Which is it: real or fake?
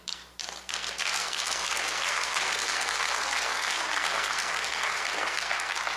fake